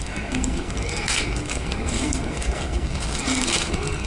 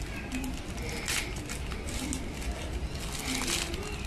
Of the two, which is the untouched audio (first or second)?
second